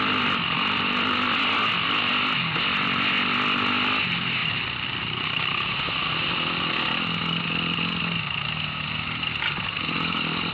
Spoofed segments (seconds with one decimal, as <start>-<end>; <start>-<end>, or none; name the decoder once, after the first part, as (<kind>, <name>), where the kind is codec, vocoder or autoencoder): none